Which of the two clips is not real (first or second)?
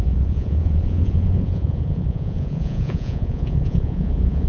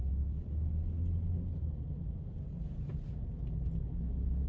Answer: first